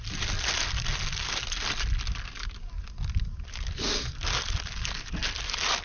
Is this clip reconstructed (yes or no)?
no